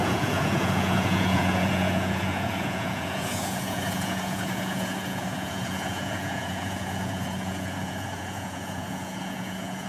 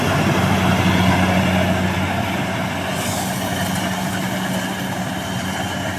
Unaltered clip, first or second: second